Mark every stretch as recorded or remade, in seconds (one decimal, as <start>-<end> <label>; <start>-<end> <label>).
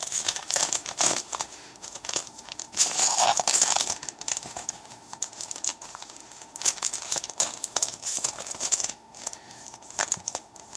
0.0-10.8 remade